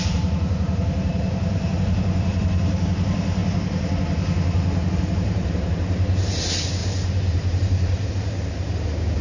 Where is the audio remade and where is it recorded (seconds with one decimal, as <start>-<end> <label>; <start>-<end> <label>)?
0.0-3.4 remade; 3.4-4.9 recorded; 4.9-9.2 remade